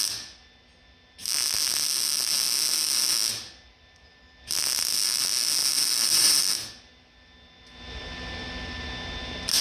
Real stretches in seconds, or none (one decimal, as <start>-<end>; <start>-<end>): 0.0-5.6; 6.5-9.6